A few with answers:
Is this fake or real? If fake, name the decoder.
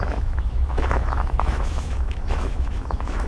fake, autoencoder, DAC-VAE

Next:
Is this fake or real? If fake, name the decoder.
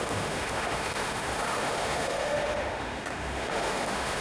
fake, autoencoder, DAC-VAE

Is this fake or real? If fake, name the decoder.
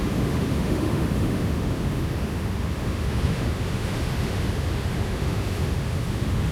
fake, autoencoder, DAC-VAE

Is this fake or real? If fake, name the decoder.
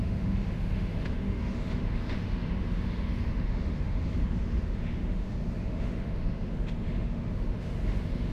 fake, autoencoder, DAC-VAE